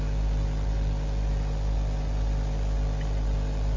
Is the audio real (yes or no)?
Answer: yes